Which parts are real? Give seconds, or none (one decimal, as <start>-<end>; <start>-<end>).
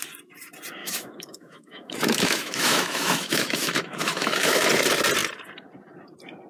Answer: 0.0-0.8; 4.7-6.5